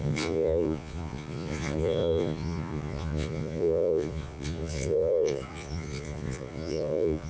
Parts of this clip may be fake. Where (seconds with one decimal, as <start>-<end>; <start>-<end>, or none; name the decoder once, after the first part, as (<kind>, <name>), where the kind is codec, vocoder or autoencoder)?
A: 0.0-7.3 (vocoder, Vocos)